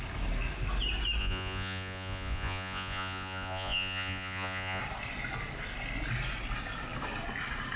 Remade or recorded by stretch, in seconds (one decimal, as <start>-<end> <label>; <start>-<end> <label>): 0.0-1.2 recorded; 1.2-4.8 remade; 4.8-7.8 recorded